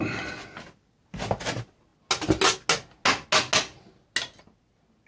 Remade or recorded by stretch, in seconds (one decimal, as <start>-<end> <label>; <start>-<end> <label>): 0.0-5.1 recorded